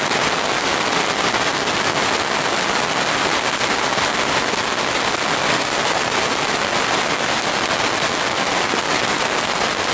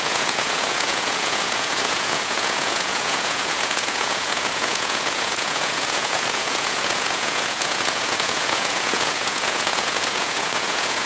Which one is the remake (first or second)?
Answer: second